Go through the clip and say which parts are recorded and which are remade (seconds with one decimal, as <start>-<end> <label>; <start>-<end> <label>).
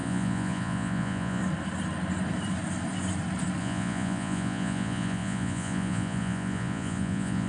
0.0-1.4 remade; 1.4-3.6 recorded; 3.6-7.5 remade